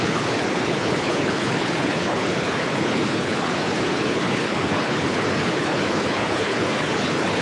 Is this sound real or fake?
fake